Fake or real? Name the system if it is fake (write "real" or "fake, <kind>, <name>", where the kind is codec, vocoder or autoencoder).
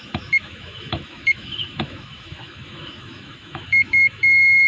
fake, autoencoder, DAC-VAE